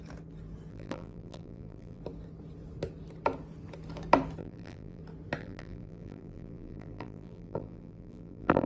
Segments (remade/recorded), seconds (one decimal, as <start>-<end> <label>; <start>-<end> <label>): 0.0-0.7 recorded; 0.7-2.0 remade; 2.0-4.4 recorded; 4.4-5.0 remade; 5.0-5.4 recorded; 5.4-8.7 remade